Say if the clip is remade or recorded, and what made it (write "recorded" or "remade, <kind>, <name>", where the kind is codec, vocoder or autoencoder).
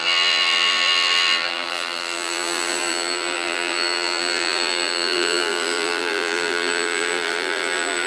remade, vocoder, BigVGAN v2